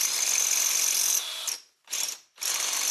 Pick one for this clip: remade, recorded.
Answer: recorded